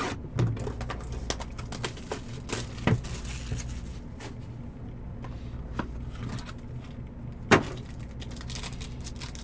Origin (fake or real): real